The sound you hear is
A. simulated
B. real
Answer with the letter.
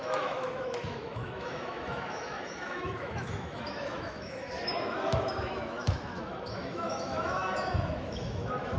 A